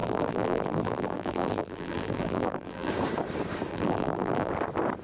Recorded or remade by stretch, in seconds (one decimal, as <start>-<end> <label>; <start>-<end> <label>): 0.0-2.9 remade; 2.9-3.7 recorded; 3.7-4.5 remade; 4.5-5.0 recorded